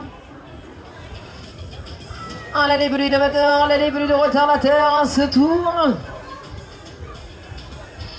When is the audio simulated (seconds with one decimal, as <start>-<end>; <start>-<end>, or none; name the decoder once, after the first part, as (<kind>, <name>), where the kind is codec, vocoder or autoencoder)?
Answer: 0.0-2.2 (vocoder, Vocos); 2.7-3.5; 4.8-8.2